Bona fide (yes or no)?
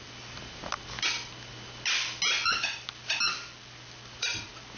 yes